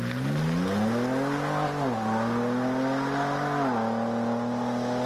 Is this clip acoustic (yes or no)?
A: yes